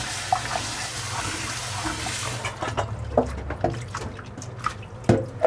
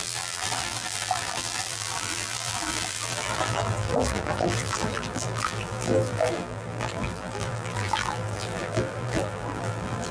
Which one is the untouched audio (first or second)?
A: first